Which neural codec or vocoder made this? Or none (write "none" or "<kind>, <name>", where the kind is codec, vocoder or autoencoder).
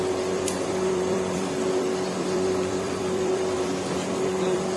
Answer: vocoder, BigVGAN v2